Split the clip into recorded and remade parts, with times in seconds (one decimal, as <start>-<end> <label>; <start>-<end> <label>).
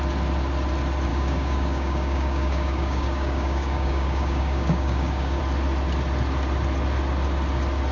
0.0-1.1 recorded; 1.1-5.4 remade; 5.4-7.9 recorded